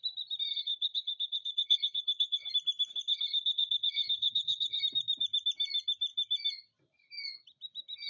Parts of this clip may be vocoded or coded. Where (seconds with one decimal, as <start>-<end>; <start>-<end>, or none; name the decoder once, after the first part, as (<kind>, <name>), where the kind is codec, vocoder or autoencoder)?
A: 0.5-2.5 (codec, HILCodec); 2.9-4.8